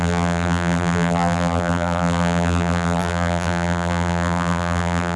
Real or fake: fake